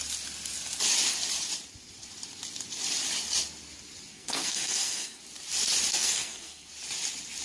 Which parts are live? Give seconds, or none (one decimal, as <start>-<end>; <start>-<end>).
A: 0.0-4.1; 5.2-5.9; 6.7-7.4